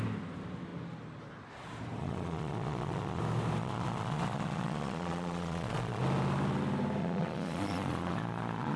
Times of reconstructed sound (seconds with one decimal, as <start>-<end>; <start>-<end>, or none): 2.0-3.2; 3.6-6.0; 7.0-8.8